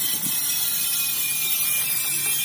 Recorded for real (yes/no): no